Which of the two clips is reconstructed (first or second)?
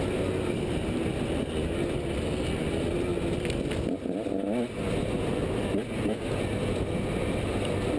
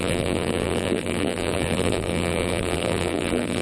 second